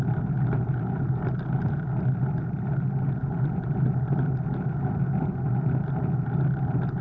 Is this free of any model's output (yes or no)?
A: yes